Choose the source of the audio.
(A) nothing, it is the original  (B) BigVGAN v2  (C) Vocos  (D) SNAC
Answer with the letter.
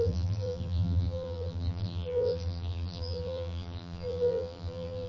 B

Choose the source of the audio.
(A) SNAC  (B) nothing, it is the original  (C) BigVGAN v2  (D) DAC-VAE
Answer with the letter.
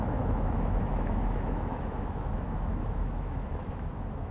D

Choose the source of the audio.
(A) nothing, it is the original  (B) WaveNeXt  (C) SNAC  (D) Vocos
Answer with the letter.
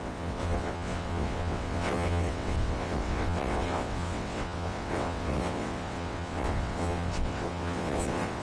B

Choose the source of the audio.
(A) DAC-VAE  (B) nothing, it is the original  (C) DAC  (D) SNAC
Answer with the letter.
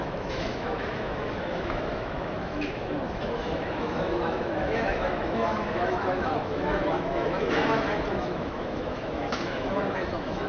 A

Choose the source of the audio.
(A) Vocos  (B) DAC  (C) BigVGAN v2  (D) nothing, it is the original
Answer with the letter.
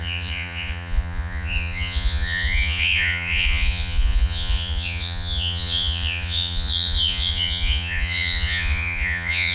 A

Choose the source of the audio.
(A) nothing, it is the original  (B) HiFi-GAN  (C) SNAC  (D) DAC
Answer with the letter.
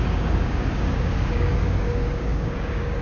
D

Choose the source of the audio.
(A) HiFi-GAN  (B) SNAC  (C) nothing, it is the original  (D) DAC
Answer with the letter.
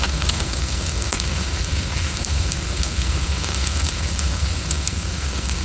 B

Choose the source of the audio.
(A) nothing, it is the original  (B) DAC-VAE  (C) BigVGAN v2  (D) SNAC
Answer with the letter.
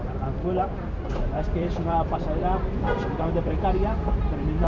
C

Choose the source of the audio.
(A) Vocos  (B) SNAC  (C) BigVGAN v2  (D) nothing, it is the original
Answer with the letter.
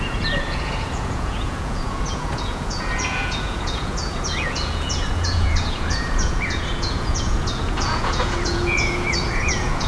A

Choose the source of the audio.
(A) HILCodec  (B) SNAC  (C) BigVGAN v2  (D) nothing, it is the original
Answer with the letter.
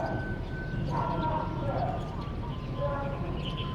D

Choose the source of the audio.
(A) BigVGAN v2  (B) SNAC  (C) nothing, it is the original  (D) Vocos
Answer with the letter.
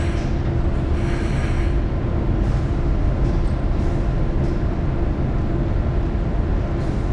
C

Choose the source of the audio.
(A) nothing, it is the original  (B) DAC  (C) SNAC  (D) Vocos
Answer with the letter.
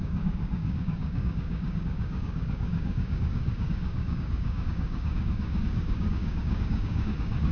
B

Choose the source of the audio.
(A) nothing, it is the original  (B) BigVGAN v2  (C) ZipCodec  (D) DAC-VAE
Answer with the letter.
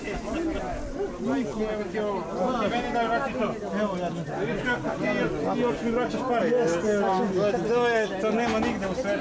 A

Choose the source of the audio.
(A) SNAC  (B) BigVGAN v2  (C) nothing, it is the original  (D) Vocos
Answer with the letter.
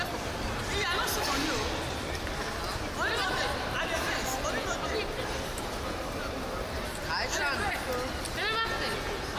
C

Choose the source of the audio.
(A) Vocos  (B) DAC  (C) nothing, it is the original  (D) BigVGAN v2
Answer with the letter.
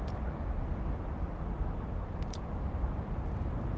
C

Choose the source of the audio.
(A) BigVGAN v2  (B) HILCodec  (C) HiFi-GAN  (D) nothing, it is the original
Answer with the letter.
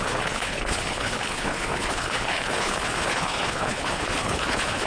B